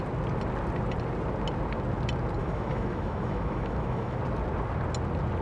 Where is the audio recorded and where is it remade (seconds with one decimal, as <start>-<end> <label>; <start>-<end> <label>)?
0.0-2.4 recorded; 2.4-4.2 remade; 4.2-5.4 recorded